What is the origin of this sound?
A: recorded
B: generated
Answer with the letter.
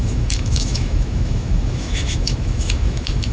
B